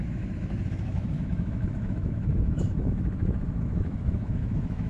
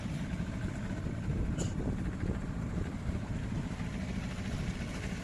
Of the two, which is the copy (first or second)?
first